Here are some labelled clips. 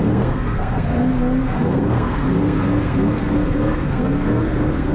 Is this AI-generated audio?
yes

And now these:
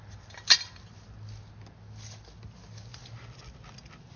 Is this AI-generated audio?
no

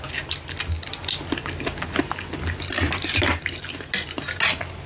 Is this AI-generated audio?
no